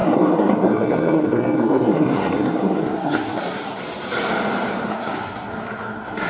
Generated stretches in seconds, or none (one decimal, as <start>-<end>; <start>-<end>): 0.0-3.8; 4.9-6.3